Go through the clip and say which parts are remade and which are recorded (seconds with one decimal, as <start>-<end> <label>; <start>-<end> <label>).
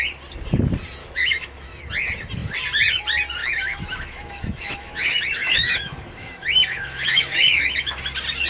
0.0-1.0 recorded; 1.0-1.8 remade; 1.8-3.4 recorded; 3.4-8.0 remade; 8.0-8.5 recorded